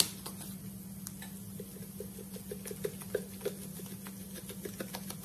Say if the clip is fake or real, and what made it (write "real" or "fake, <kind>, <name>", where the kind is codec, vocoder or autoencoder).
real